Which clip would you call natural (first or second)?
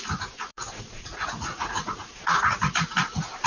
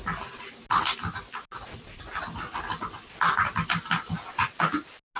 second